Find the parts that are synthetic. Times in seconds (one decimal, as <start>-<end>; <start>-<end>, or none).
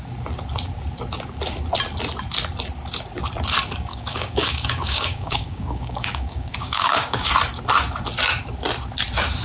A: 3.9-7.3